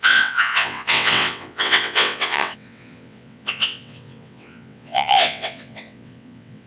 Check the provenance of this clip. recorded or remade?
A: remade